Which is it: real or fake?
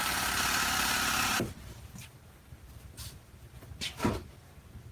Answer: fake